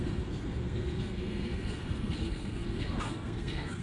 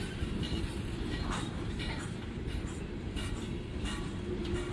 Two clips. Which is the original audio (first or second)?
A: second